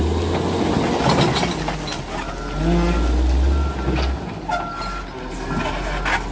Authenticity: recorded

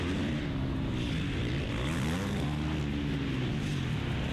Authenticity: recorded